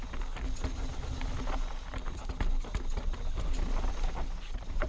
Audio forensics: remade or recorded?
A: recorded